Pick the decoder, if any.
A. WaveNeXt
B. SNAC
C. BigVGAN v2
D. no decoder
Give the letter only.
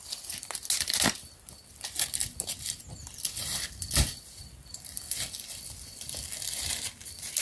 D